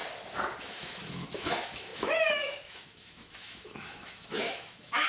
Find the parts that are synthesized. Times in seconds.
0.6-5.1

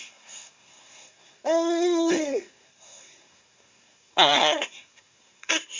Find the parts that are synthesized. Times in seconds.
0.0-5.8

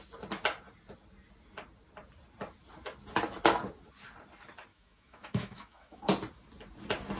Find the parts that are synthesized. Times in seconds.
4.7-6.0

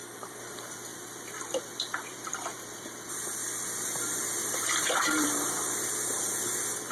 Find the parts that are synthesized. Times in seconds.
0.9-2.9; 3.4-5.9

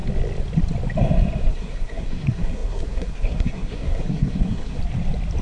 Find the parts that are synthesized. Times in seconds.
1.5-4.8